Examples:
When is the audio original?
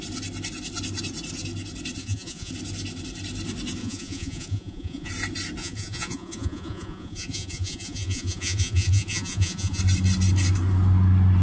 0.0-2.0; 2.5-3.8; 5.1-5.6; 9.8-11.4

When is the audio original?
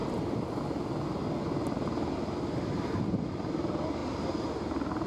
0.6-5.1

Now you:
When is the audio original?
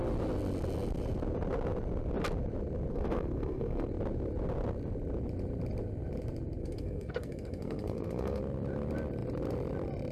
0.0-2.9; 3.9-6.6; 8.4-10.1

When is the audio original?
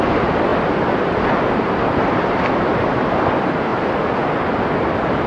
3.7-5.3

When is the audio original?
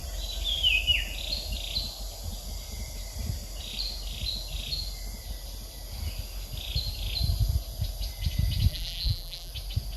0.0-8.7; 9.5-10.0